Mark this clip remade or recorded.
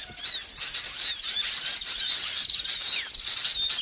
recorded